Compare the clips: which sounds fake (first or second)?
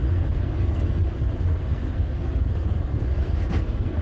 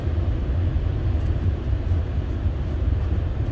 first